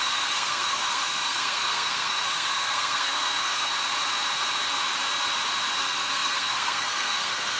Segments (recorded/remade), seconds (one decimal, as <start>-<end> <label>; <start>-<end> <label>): 0.0-3.7 remade; 3.7-5.8 recorded; 5.8-7.6 remade